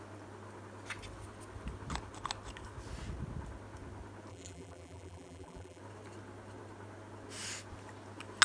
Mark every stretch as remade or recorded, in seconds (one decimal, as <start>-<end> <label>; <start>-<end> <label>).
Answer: 0.0-4.3 recorded; 4.3-5.8 remade; 5.8-8.4 recorded